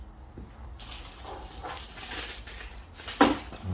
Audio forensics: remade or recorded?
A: recorded